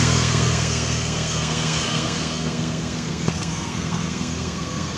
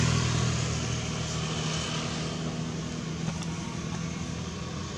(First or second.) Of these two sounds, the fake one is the first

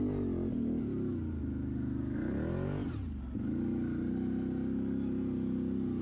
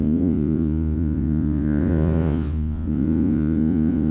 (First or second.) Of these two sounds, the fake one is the second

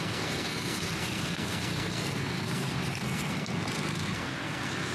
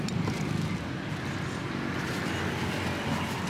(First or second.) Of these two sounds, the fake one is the first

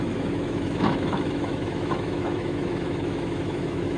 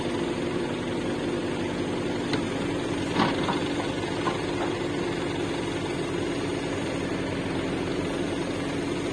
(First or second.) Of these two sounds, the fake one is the first